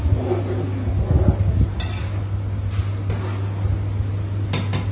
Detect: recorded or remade recorded